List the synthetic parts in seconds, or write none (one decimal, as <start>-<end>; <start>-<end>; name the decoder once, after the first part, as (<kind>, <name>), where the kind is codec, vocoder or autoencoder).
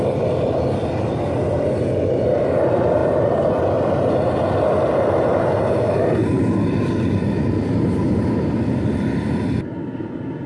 none